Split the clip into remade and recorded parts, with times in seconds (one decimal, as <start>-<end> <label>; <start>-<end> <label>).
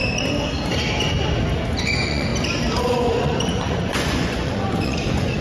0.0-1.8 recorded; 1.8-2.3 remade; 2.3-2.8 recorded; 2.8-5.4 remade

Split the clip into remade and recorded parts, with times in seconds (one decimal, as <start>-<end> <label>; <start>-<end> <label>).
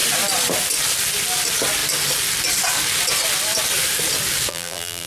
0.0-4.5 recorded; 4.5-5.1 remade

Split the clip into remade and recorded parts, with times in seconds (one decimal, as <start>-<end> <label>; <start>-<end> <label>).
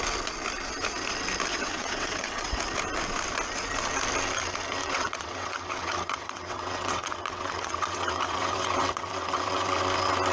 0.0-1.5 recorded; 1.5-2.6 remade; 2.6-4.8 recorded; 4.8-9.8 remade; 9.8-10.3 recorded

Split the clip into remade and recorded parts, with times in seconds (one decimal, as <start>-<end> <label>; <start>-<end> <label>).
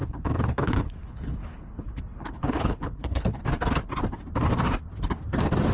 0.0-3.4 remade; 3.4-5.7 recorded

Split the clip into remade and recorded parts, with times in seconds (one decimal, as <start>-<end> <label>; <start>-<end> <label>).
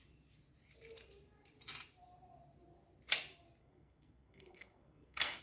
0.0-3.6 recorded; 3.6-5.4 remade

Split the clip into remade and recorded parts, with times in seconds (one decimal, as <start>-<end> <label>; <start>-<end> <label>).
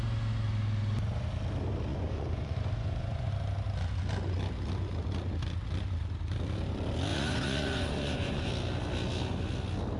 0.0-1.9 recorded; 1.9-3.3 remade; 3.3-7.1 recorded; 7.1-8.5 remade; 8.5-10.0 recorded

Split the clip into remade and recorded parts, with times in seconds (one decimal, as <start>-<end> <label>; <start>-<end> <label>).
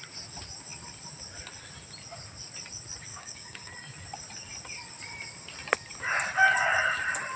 0.0-3.1 recorded; 3.1-3.7 remade; 3.7-7.4 recorded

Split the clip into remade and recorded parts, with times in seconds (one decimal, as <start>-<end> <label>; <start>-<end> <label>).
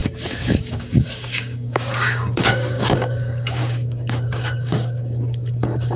0.0-6.0 remade